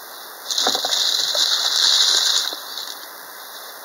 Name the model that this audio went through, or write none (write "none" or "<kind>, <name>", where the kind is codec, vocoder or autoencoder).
none